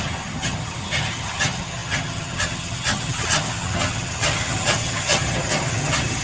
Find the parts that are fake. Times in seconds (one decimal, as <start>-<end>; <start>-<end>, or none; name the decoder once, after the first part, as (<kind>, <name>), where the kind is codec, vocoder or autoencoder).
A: 0.0-6.2 (vocoder, HiFi-GAN)